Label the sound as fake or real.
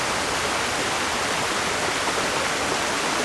real